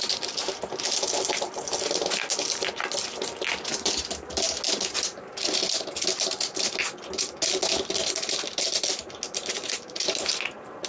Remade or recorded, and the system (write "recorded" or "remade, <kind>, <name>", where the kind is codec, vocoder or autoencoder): recorded